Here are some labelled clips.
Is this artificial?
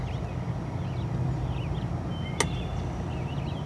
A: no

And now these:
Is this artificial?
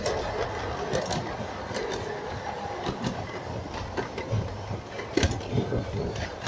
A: no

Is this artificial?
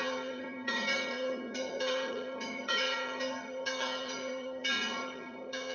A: yes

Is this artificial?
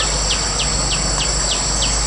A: no